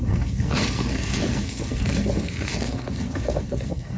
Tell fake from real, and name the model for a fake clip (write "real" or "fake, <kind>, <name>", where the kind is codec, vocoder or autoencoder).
fake, codec, SNAC